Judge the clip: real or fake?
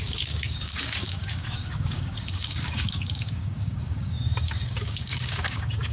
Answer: fake